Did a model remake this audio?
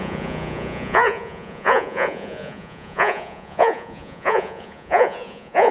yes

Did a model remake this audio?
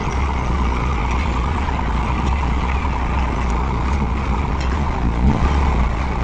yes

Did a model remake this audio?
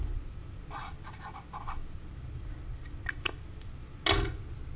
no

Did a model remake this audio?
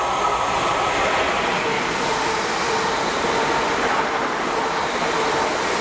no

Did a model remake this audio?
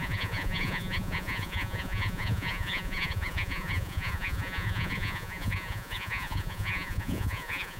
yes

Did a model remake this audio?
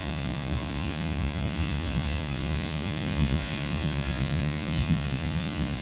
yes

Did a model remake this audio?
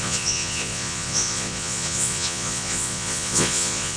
yes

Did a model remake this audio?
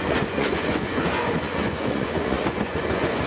yes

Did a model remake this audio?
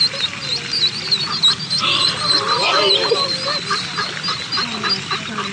no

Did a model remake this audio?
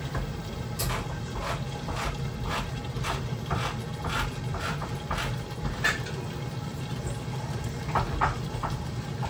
no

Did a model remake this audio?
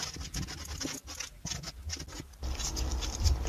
no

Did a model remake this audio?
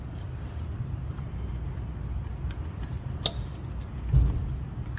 no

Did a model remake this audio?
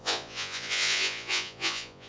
yes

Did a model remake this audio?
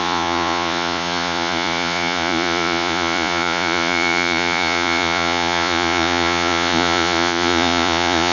yes